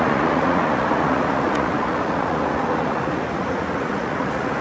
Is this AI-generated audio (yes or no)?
yes